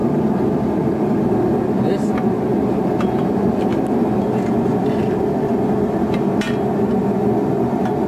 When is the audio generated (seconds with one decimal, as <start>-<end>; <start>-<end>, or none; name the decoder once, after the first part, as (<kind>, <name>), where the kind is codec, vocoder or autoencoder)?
0.0-1.5 (vocoder, BigVGAN v2); 2.5-5.1

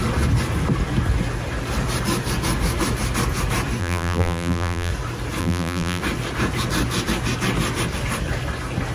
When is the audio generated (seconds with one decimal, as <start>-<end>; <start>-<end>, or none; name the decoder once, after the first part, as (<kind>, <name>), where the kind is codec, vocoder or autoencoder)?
3.8-4.9 (vocoder, BigVGAN v2); 5.4-6.0